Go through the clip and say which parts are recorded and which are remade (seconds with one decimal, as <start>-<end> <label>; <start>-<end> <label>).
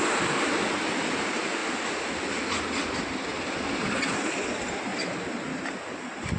0.0-6.4 recorded